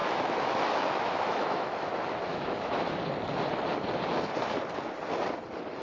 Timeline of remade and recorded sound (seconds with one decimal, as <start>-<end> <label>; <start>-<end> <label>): 0.0-1.9 remade; 1.9-2.3 recorded; 2.3-3.0 remade; 3.0-5.8 recorded